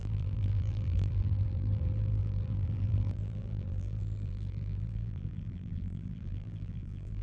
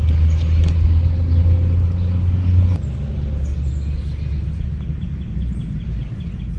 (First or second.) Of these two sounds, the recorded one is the second